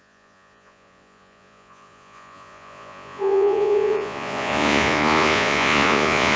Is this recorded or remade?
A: remade